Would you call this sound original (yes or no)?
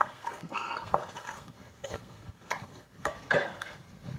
no